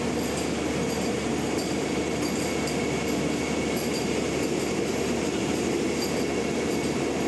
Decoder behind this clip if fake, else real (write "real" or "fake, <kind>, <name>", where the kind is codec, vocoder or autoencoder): real